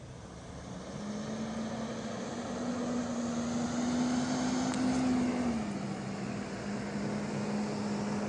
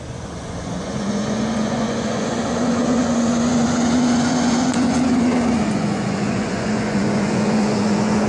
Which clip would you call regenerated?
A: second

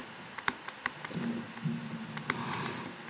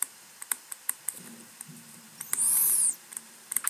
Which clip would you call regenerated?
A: second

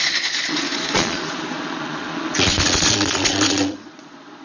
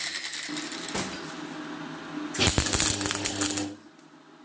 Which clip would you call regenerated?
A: first